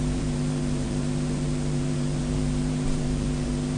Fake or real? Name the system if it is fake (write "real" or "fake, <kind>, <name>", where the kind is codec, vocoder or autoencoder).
fake, vocoder, BigVGAN v2